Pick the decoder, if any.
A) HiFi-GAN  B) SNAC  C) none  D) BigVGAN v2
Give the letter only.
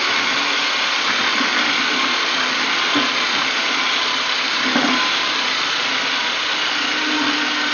D